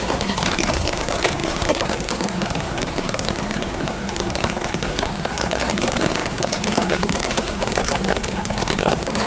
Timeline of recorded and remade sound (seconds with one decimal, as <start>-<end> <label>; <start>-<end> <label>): 0.0-9.3 remade

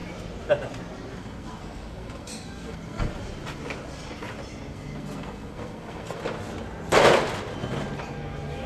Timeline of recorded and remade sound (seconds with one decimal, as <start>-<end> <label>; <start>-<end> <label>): 0.0-1.2 recorded; 1.2-3.1 remade; 3.1-4.7 recorded; 4.7-6.2 remade; 6.2-8.7 recorded

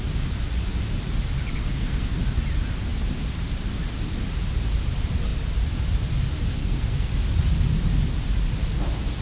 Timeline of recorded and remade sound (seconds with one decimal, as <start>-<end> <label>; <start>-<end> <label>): 0.0-1.6 recorded; 1.6-2.2 remade; 2.2-6.5 recorded; 6.5-7.1 remade; 7.1-9.2 recorded

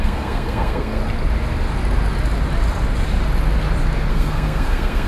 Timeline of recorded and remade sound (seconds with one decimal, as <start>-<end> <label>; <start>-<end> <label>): 0.0-1.0 remade; 1.0-4.1 recorded; 4.1-5.1 remade

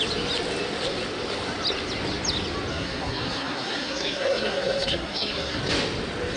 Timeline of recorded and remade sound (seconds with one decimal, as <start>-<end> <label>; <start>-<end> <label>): 0.0-2.7 recorded; 2.7-5.6 remade; 5.6-6.4 recorded

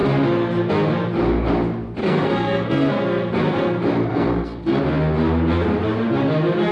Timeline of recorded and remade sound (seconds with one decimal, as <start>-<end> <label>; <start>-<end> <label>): 0.0-2.0 recorded; 2.0-2.9 remade; 2.9-4.1 recorded; 4.1-4.8 remade; 4.8-6.7 recorded

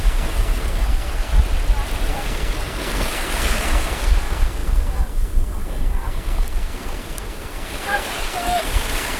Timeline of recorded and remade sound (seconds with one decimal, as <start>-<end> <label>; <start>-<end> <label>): 0.0-1.3 remade; 1.3-2.1 recorded; 2.1-9.2 remade